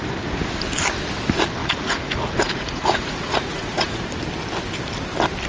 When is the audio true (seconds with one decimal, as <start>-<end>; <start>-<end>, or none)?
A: 0.0-1.6; 4.0-5.5